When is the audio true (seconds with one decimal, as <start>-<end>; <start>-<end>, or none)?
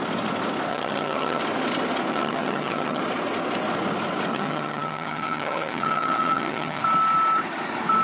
0.0-0.7; 1.4-2.1; 3.0-4.3; 6.8-8.0